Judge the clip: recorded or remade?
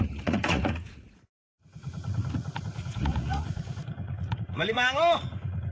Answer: remade